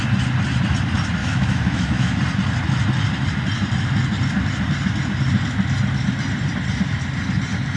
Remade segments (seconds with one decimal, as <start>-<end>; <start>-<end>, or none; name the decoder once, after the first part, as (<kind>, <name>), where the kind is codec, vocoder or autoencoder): 1.2-2.2 (autoencoder, DAC-VAE)